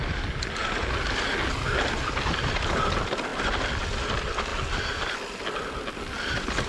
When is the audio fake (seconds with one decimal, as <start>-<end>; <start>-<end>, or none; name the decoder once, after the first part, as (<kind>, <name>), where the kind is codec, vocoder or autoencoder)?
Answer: none